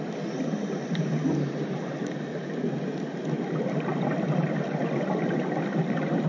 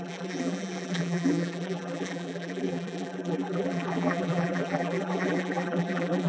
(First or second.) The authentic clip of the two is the first